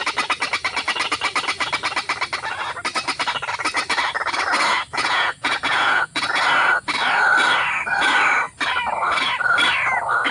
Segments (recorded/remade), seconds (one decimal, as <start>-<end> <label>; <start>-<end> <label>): 0.0-4.9 recorded; 4.9-6.4 remade; 6.4-10.3 recorded